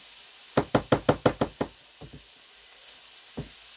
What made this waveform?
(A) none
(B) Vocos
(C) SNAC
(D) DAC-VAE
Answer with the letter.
A